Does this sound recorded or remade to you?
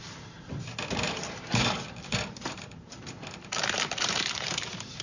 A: remade